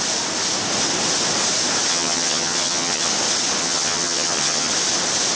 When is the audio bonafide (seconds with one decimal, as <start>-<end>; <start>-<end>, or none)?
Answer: 0.0-1.9; 3.1-3.6; 4.7-5.4